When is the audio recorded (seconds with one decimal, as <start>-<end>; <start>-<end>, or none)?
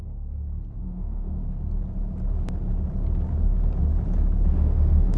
0.0-0.8; 1.4-4.5